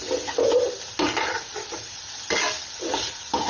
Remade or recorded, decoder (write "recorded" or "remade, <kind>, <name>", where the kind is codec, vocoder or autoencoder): recorded